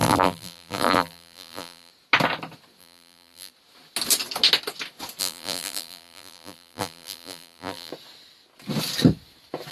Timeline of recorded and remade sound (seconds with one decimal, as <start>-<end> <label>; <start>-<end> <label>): 0.0-1.9 remade; 1.9-2.8 recorded; 2.8-3.5 remade; 3.5-5.2 recorded; 5.2-7.9 remade; 7.9-9.7 recorded